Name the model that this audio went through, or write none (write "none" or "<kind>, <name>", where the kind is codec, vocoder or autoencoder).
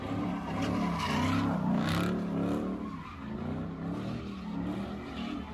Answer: none